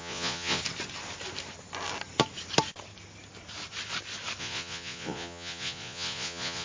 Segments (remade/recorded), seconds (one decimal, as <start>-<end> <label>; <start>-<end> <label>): 0.0-0.6 remade; 0.6-4.4 recorded; 4.4-6.6 remade